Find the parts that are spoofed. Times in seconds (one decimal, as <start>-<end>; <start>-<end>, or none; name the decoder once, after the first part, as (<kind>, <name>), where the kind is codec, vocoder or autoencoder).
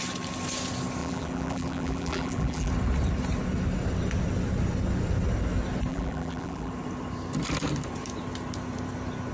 1.0-2.7 (vocoder, BigVGAN v2); 5.9-6.7